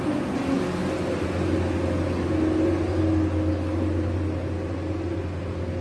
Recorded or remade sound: recorded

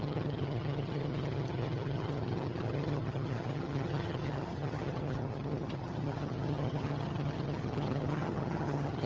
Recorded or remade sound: remade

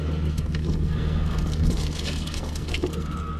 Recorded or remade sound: remade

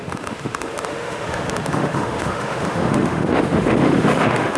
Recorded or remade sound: remade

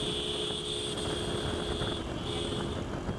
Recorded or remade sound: recorded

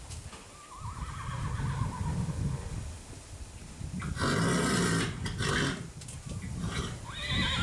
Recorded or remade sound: recorded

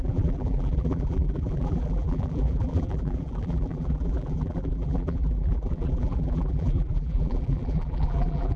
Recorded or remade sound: remade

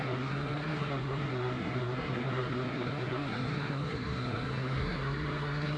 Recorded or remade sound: remade